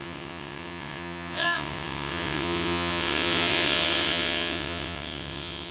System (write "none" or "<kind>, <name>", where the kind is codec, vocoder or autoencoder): vocoder, WaveNeXt